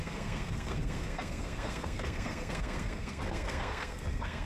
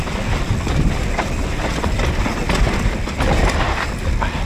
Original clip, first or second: second